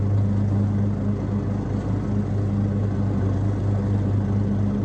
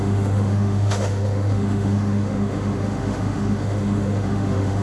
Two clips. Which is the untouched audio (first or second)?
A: first